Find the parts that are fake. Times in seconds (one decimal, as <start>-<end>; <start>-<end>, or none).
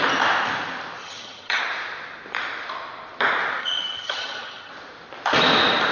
1.0-1.6; 3.6-4.7